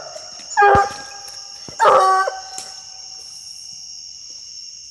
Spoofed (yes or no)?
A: no